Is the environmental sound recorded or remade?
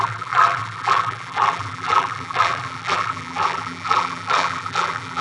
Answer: remade